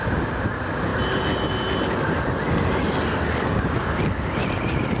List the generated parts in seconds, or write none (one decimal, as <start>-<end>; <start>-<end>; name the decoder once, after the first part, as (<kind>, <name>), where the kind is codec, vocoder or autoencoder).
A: none